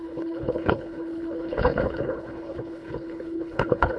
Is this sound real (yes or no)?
no